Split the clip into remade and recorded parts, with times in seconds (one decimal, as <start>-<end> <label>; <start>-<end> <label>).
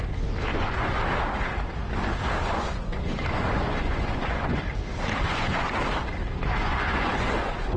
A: 0.0-0.5 recorded; 0.5-1.0 remade; 1.0-2.4 recorded; 2.4-4.6 remade; 4.6-5.3 recorded; 5.3-5.8 remade; 5.8-6.6 recorded; 6.6-7.8 remade